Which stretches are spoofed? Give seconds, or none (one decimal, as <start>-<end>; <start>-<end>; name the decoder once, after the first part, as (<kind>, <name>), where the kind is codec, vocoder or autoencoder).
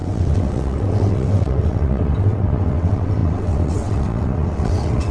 0.0-5.1 (vocoder, WaveNeXt)